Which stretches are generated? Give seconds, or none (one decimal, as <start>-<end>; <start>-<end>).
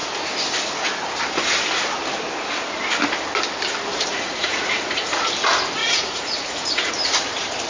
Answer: 4.1-5.2; 5.8-6.9